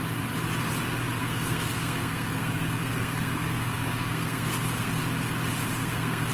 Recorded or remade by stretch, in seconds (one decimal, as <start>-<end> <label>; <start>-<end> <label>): 0.0-1.2 recorded; 1.2-5.0 remade; 5.0-5.8 recorded; 5.8-6.3 remade